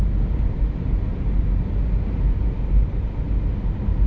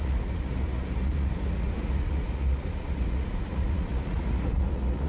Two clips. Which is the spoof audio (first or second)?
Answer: second